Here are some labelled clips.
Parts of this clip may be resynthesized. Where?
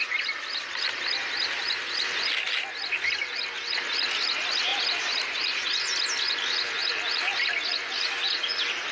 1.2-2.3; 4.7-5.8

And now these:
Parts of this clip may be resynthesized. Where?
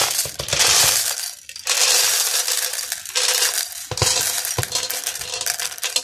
none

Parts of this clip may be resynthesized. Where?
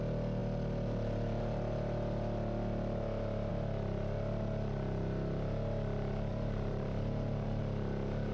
6.3-7.6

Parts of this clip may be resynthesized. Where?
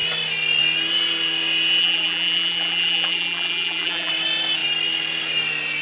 1.8-4.1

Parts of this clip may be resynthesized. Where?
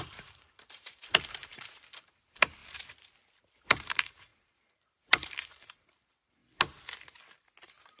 0.0-2.6; 3.4-6.4; 7.6-8.0